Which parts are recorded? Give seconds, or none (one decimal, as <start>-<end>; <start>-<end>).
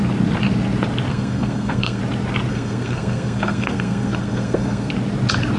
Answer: 0.0-1.1; 2.0-2.5; 4.9-5.6